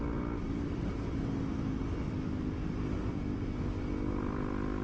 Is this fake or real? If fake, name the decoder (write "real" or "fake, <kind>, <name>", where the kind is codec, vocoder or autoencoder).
real